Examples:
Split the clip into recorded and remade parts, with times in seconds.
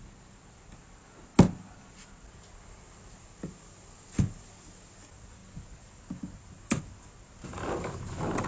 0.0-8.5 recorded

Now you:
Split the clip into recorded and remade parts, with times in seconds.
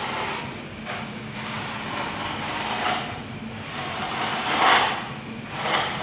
0.0-0.7 recorded; 0.7-1.6 remade; 1.6-6.0 recorded